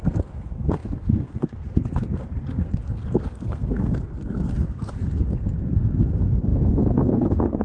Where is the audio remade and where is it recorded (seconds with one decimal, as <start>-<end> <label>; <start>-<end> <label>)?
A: 0.0-7.6 remade